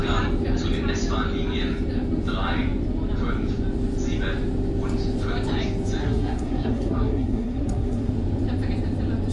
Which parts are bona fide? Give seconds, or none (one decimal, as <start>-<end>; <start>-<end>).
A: 0.0-6.0; 8.1-9.3